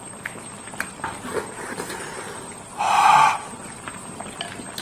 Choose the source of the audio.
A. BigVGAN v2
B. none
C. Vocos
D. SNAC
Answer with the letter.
B